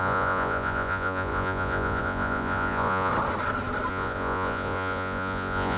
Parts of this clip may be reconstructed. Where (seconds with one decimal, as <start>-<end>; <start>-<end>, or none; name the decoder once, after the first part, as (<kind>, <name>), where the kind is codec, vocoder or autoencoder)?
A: 0.0-3.1 (vocoder, Vocos); 3.9-5.8